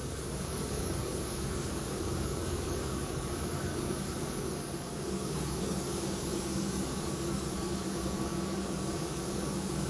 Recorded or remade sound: remade